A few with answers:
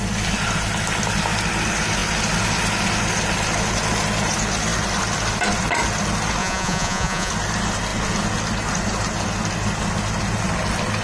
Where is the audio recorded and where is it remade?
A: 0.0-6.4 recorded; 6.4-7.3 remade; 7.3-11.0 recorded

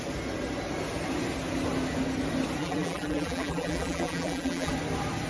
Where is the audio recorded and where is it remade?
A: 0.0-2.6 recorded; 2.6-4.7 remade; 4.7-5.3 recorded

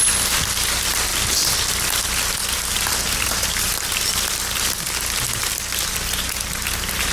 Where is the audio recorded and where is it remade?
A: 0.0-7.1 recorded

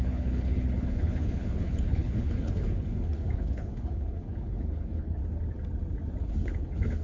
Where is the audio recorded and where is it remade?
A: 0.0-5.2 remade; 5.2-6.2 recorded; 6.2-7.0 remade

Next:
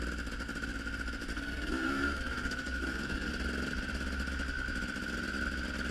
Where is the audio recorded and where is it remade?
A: 0.0-1.3 recorded; 1.3-3.3 remade; 3.3-5.9 recorded